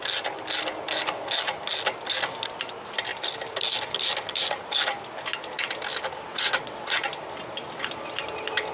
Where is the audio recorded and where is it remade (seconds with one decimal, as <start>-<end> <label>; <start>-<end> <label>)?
0.0-6.3 recorded; 6.3-7.1 remade; 7.1-8.7 recorded